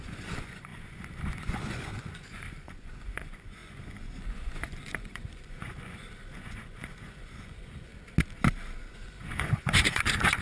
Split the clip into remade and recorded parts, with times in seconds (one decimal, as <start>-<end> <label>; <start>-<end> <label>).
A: 0.0-7.9 remade; 7.9-8.9 recorded; 8.9-10.4 remade